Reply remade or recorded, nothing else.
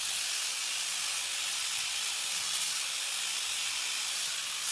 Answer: recorded